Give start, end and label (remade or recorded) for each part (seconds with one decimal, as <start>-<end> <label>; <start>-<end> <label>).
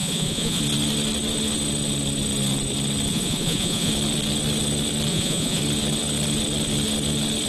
0.0-0.6 remade; 0.6-3.1 recorded; 3.1-3.9 remade; 3.9-5.1 recorded; 5.1-5.6 remade; 5.6-7.5 recorded